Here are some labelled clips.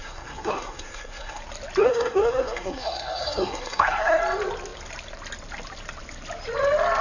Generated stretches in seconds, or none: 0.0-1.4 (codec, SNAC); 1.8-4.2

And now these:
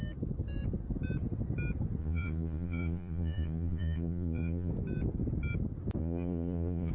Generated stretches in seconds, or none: 2.0-4.7 (vocoder, Vocos); 6.0-6.9